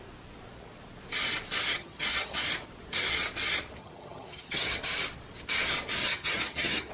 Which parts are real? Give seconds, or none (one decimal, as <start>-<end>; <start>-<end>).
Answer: 0.0-1.7; 2.4-3.8; 4.8-6.0

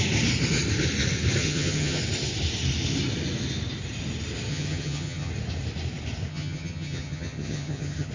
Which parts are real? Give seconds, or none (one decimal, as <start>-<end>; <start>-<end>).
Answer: 0.0-1.4; 2.0-4.5; 5.3-6.3

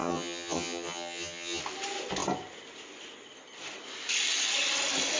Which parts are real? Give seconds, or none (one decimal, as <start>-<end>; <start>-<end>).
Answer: 1.6-5.2

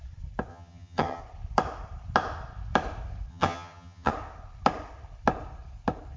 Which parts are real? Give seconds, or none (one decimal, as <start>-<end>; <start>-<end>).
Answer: 0.0-0.5; 1.2-3.3; 4.1-6.2

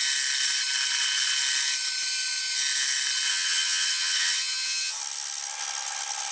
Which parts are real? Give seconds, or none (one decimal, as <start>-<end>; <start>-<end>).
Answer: 0.0-3.3; 5.0-6.3

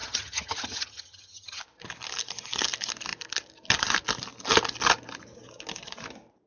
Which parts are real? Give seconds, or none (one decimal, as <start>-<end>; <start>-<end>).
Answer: 1.6-6.5

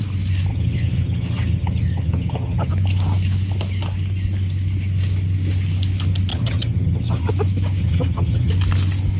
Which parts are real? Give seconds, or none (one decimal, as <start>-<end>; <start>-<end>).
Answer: 0.0-0.5; 2.7-6.3; 7.3-7.8; 8.5-9.2

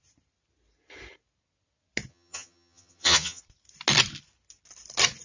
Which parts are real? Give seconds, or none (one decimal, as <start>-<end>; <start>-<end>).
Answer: 0.0-2.1; 3.4-5.2